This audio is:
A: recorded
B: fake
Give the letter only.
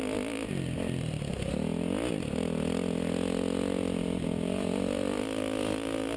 A